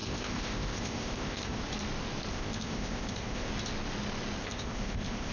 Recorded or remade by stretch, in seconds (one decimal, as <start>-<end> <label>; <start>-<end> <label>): 0.0-1.6 remade; 1.6-2.3 recorded; 2.3-3.5 remade; 3.5-4.4 recorded; 4.4-5.3 remade